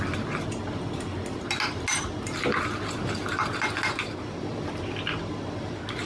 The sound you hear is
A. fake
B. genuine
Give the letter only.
B